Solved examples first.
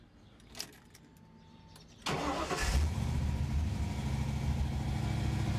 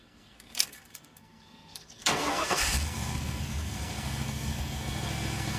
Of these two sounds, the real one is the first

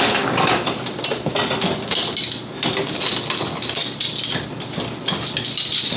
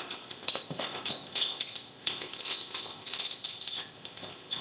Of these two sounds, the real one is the first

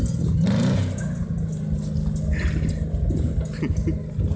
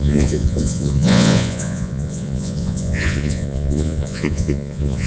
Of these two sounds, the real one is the first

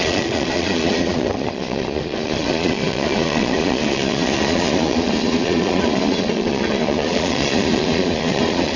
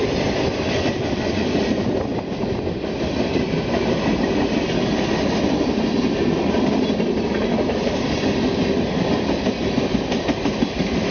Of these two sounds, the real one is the second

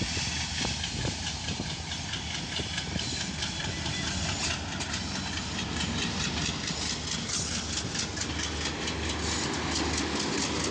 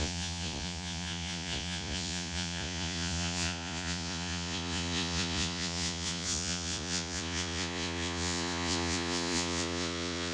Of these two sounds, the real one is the first